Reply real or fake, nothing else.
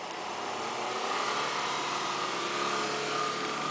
real